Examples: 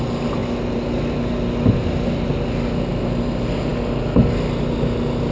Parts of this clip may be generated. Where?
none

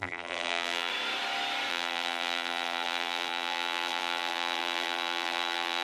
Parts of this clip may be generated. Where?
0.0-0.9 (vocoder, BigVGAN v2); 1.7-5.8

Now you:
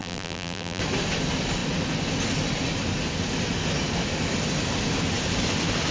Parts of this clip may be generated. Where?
0.0-0.8 (vocoder, BigVGAN v2)